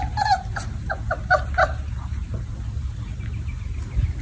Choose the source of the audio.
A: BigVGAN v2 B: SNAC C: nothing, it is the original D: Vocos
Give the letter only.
C